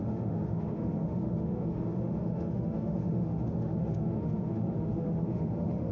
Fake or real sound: fake